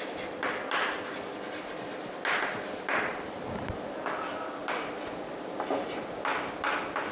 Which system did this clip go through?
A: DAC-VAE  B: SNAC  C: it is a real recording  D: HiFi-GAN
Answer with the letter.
C